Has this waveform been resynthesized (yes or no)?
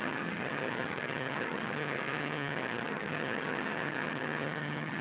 yes